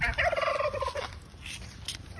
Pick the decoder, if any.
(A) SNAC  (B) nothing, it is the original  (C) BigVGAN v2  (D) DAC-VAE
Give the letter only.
B